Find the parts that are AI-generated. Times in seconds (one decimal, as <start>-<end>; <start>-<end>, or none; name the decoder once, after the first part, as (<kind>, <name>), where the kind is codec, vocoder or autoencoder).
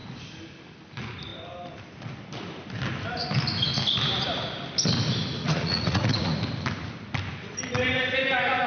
5.4-6.3 (vocoder, Vocos)